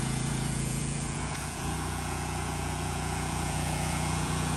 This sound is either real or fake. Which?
fake